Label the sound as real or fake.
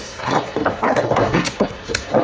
fake